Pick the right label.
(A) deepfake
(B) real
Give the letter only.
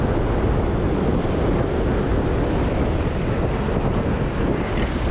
B